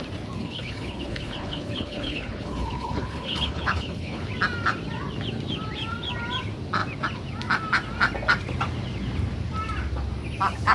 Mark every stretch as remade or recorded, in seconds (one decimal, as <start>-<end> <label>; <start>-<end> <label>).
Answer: 0.0-0.4 recorded; 0.4-4.3 remade; 4.3-10.7 recorded